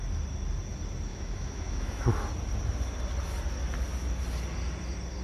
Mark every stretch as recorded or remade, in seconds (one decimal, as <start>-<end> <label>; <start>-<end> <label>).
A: 0.0-1.1 recorded; 1.1-2.1 remade; 2.1-5.2 recorded